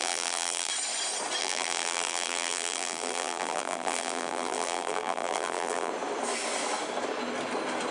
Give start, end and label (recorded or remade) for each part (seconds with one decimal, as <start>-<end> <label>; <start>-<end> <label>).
0.0-0.7 remade; 0.7-1.4 recorded; 1.4-5.9 remade; 5.9-7.9 recorded